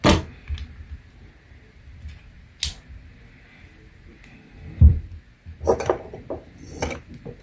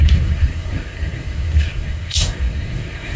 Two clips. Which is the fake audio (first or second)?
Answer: second